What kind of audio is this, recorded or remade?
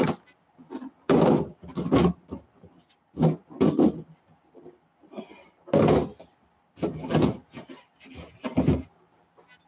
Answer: recorded